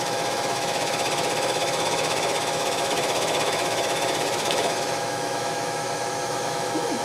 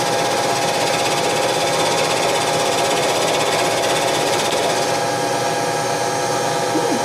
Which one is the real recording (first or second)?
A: second